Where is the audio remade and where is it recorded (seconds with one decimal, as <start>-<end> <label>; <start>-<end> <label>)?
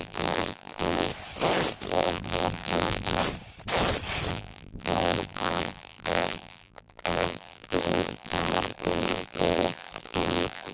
0.0-1.1 remade; 1.1-1.9 recorded; 1.9-3.2 remade; 3.2-4.3 recorded; 4.3-10.7 remade